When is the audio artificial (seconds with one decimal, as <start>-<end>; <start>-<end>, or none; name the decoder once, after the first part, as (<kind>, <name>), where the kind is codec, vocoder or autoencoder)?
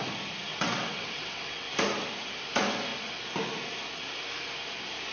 0.5-1.7 (vocoder, WaveNeXt)